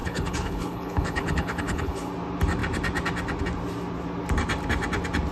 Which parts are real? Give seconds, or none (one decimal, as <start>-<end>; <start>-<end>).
2.1-5.3